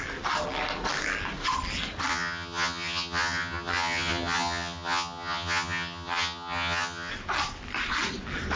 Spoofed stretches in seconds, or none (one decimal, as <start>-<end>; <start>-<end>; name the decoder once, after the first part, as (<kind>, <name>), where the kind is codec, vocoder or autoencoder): 2.1-7.1 (vocoder, HiFi-GAN)